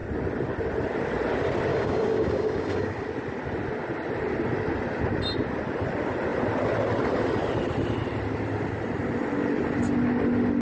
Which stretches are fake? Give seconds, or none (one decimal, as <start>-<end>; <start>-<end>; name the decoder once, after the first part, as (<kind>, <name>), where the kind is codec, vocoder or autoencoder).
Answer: 1.7-3.0 (codec, DAC)